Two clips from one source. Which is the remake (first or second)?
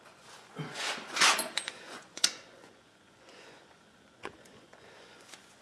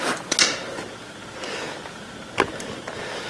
first